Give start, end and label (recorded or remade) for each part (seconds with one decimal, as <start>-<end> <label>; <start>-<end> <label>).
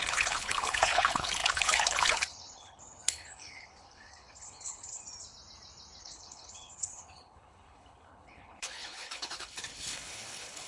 0.0-5.0 remade; 5.0-6.0 recorded; 6.0-10.7 remade